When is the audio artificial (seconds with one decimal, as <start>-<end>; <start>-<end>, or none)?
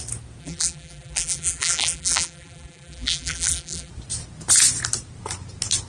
0.4-3.9